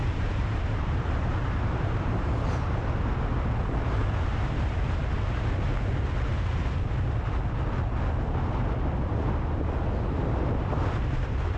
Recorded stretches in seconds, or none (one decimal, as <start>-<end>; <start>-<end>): 3.0-4.0; 5.0-11.6